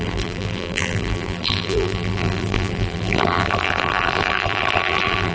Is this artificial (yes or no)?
yes